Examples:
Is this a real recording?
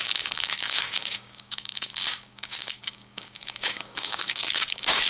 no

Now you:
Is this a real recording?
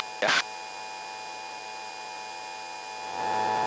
yes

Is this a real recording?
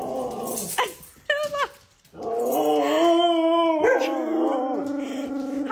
yes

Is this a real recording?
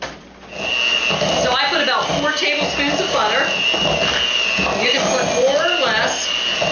yes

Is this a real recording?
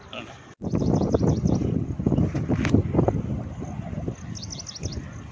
yes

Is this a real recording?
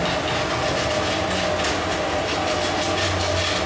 yes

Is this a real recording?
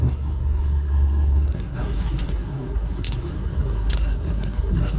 no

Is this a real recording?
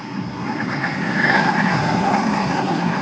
no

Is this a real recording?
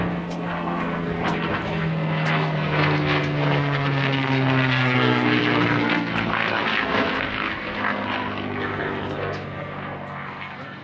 no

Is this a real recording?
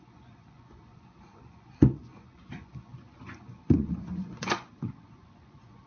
no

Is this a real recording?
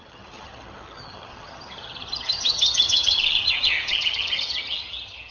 no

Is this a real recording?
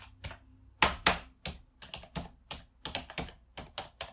yes